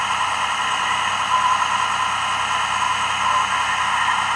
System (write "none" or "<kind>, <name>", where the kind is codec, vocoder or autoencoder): none